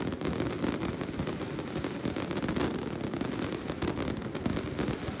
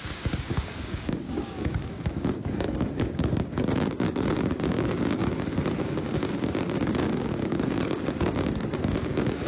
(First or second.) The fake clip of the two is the second